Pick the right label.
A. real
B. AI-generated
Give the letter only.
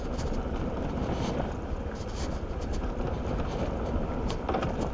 A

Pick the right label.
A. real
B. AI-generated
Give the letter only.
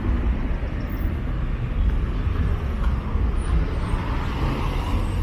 A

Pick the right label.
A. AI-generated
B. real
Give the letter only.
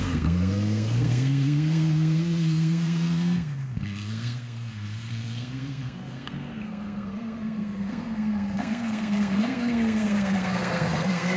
A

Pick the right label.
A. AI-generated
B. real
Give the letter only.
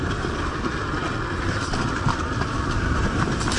B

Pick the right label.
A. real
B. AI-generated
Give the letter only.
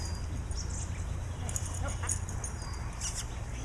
A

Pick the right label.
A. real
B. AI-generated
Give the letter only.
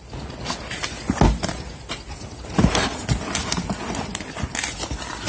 A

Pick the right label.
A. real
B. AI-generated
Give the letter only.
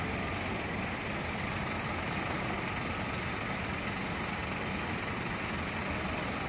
A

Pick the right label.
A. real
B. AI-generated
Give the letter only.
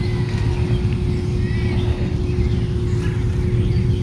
A